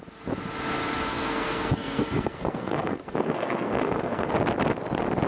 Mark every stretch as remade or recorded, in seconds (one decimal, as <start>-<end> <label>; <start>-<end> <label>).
0.0-1.1 recorded; 1.1-4.3 remade; 4.3-5.3 recorded